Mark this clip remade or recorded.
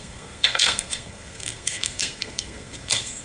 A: remade